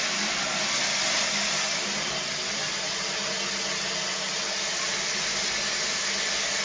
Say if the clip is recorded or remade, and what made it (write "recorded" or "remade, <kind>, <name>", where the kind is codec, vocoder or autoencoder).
recorded